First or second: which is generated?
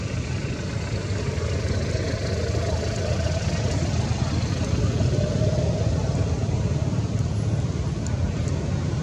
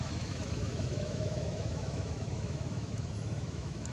second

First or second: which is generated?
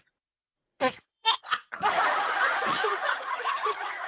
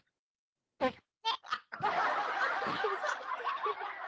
first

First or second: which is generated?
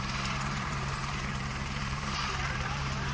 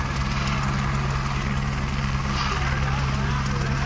first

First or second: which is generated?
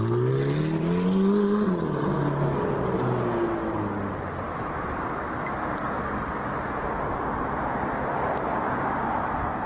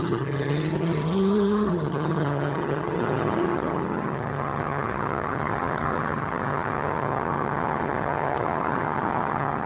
second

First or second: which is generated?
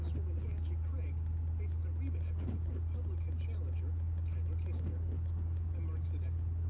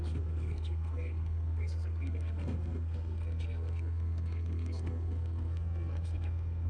second